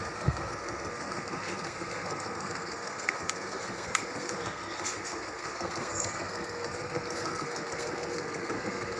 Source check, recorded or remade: remade